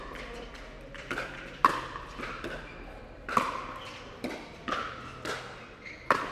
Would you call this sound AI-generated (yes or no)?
yes